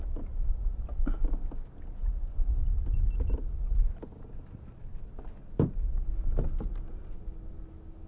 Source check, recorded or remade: recorded